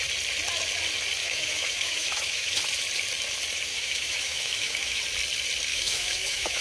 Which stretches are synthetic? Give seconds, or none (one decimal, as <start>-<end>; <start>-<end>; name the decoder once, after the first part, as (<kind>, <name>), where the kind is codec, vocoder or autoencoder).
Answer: 1.2-2.6 (autoencoder, DAC-VAE); 3.7-5.0; 5.7-6.6